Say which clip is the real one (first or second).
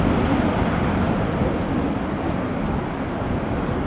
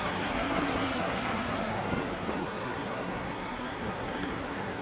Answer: first